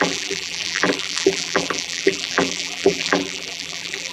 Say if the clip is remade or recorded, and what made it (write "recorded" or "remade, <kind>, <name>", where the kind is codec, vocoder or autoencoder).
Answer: remade, vocoder, BigVGAN v2